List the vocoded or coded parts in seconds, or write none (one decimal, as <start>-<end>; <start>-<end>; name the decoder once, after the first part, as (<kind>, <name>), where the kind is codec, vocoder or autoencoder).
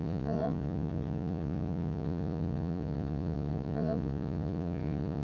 0.0-5.2 (vocoder, Vocos)